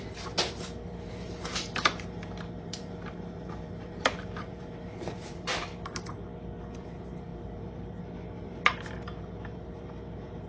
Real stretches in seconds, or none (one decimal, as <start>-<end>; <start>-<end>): 5.7-6.7